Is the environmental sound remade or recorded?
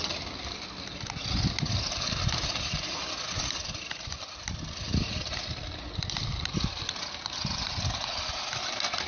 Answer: recorded